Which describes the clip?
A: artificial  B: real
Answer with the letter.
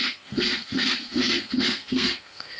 A